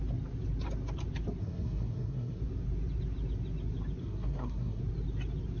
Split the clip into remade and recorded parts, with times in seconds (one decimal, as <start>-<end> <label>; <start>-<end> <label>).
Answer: 0.0-1.4 recorded; 1.4-2.4 remade; 2.4-4.0 recorded; 4.0-4.8 remade; 4.8-5.6 recorded